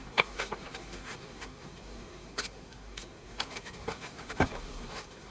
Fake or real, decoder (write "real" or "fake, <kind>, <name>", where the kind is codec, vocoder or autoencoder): fake, codec, SNAC